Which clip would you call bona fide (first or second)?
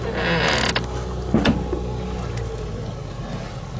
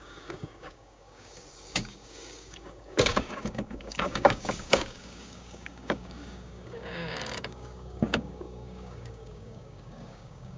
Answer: first